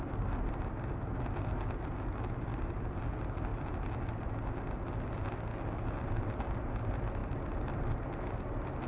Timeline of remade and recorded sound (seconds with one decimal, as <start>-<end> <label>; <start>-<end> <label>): 0.0-2.5 recorded; 2.5-3.0 remade; 3.0-7.2 recorded; 7.2-7.8 remade; 7.8-8.9 recorded